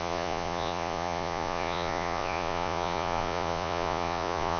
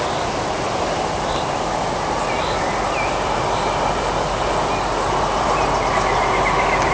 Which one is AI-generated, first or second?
first